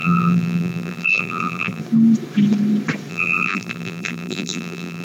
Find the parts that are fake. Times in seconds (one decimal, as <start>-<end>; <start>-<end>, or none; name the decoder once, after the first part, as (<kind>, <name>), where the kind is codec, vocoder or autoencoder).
0.0-1.8 (vocoder, BigVGAN v2); 3.1-5.0